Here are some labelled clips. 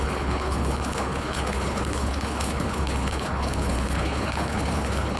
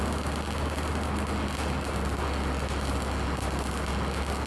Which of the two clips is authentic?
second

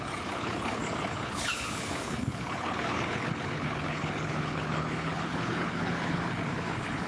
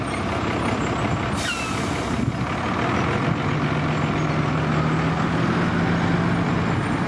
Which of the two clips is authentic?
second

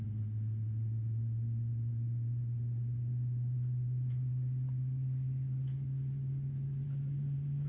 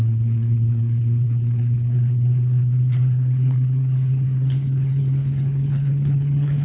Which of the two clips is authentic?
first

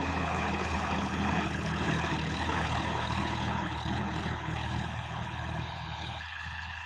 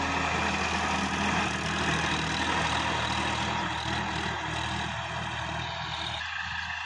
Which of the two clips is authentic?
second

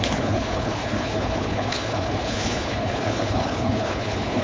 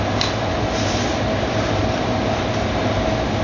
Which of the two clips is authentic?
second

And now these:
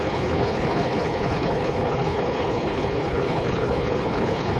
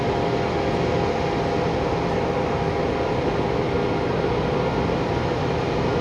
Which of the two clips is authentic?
second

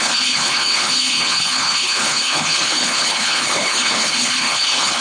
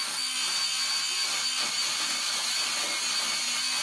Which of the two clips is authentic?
second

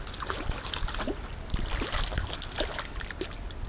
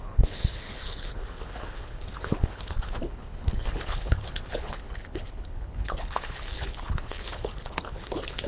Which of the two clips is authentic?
first